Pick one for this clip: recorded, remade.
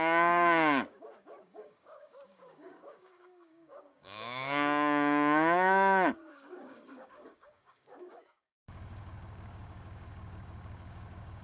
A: remade